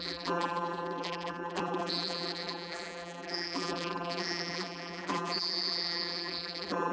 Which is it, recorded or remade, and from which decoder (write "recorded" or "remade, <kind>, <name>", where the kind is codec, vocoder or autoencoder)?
remade, vocoder, BigVGAN v2